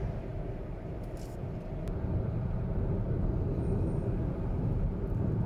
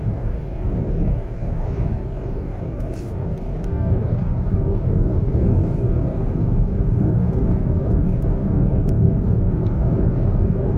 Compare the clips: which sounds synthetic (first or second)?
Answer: second